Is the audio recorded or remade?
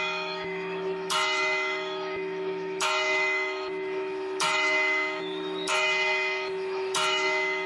remade